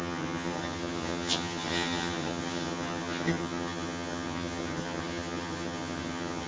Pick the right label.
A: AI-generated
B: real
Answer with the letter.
A